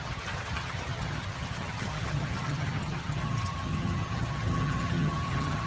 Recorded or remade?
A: remade